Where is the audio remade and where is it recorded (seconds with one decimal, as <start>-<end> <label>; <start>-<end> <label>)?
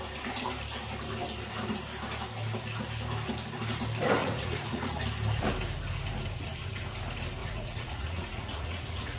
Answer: 0.0-4.2 recorded; 4.2-5.0 remade; 5.0-7.4 recorded; 7.4-9.2 remade